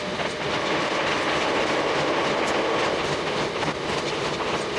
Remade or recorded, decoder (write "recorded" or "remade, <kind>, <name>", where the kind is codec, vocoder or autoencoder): recorded